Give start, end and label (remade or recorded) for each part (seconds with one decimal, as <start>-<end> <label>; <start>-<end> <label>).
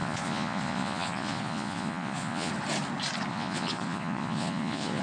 0.0-2.5 remade; 2.5-3.3 recorded; 3.3-5.0 remade